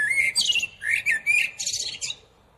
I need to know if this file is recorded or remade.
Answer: recorded